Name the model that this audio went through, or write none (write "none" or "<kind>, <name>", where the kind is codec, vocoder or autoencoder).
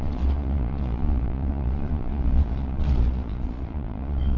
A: vocoder, Vocos